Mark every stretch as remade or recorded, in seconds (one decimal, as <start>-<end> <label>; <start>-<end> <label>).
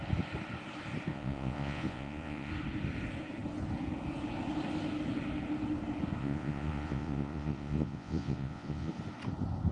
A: 0.0-1.1 recorded; 1.1-2.5 remade; 2.5-6.2 recorded; 6.2-8.9 remade; 8.9-9.7 recorded